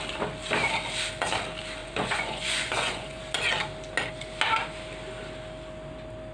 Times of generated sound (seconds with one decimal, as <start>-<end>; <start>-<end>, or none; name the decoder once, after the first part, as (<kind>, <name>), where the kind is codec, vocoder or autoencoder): 1.8-3.2 (vocoder, Vocos)